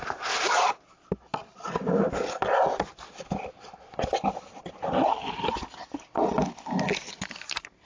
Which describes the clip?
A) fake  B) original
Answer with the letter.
B